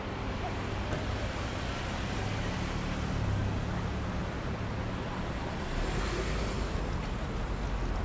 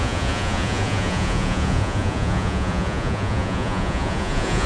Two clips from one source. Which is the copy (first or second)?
second